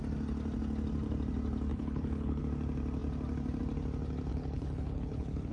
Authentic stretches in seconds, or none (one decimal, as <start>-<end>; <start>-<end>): 0.0-1.7; 2.4-4.3